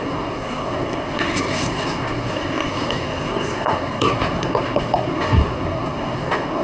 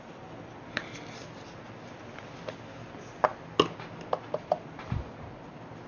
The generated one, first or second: first